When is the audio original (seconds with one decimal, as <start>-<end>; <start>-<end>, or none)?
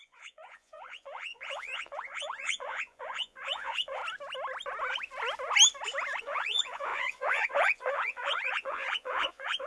4.0-6.2